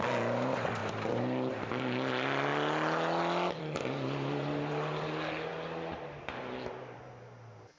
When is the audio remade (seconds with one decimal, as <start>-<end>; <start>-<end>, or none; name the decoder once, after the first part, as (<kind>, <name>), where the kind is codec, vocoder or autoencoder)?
none